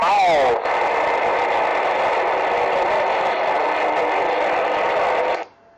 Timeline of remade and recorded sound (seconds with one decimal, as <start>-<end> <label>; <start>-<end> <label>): 0.0-5.8 recorded